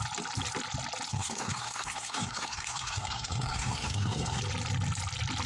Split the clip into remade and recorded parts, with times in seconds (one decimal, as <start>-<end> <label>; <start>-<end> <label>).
0.0-1.1 recorded; 1.1-4.4 remade; 4.4-5.5 recorded